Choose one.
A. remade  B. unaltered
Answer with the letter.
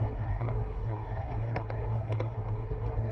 A